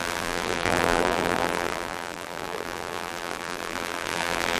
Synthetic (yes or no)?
yes